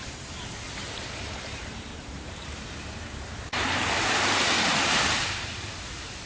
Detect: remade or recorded remade